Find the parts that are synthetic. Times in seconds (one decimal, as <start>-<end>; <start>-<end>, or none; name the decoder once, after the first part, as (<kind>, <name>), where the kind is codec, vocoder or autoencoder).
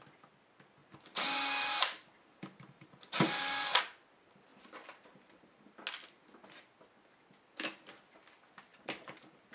0.8-3.2 (vocoder, BigVGAN v2); 4.5-5.7; 8.7-9.5